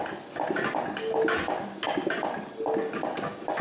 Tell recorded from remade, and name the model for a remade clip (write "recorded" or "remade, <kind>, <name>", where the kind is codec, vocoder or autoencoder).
recorded